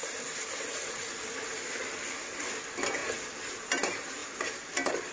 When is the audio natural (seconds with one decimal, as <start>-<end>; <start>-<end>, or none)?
0.0-5.1